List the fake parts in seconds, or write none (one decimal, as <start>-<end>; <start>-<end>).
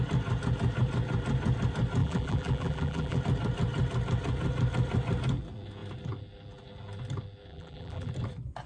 2.0-3.2; 7.5-8.1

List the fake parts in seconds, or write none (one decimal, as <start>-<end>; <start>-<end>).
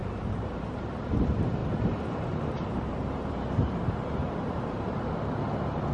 0.0-0.8; 1.6-5.1